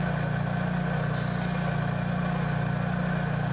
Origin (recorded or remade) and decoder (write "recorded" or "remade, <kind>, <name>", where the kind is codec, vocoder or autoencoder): recorded